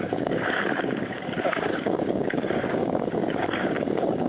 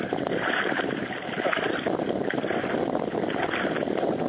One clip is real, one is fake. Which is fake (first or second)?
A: first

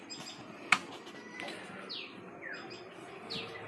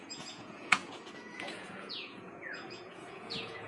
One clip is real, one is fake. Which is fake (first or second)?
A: second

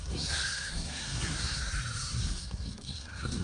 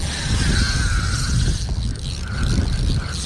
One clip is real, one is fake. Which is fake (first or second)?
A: first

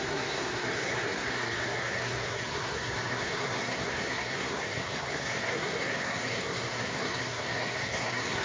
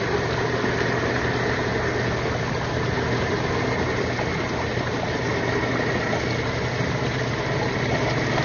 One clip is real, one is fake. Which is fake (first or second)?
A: first